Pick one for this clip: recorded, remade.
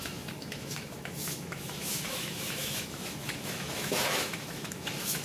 remade